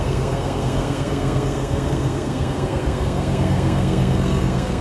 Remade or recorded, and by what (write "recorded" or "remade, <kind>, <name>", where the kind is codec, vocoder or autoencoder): remade, codec, SNAC